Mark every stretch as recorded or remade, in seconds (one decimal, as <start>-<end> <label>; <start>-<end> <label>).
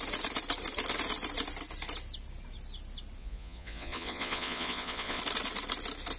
0.0-3.2 recorded; 3.2-5.2 remade; 5.2-6.2 recorded